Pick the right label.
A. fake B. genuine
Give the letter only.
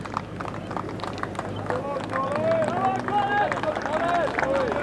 B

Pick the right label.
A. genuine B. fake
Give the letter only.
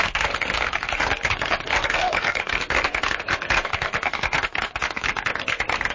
B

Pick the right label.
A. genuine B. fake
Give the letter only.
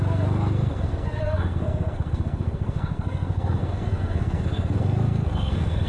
B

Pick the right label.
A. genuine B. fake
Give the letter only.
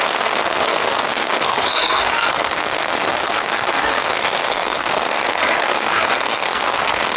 B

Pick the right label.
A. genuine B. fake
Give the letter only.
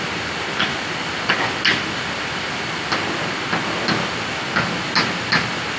A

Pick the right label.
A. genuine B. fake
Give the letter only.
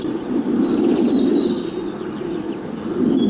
A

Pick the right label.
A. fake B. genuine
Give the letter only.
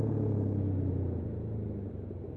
B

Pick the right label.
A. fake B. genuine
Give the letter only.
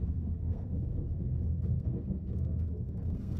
A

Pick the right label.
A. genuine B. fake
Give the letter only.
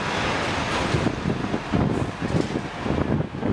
A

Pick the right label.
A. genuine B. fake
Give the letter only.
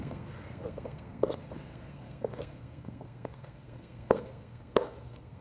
B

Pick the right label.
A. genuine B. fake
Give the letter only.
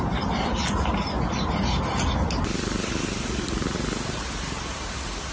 A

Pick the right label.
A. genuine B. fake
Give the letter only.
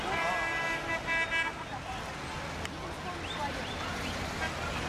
A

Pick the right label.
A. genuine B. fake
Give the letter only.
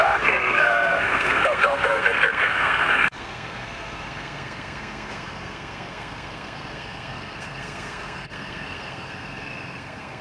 B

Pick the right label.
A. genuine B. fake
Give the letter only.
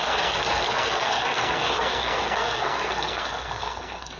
B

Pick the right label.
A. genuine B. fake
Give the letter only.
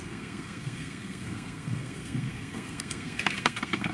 B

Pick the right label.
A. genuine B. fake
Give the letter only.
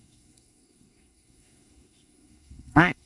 B